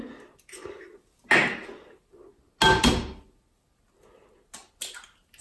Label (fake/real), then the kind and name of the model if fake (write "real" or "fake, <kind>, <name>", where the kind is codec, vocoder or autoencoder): real